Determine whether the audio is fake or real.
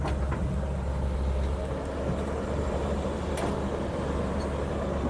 real